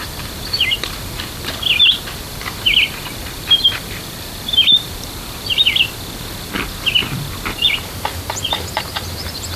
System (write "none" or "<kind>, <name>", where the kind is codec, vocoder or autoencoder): vocoder, BigVGAN v2